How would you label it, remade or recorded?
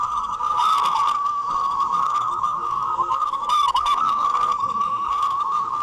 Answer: remade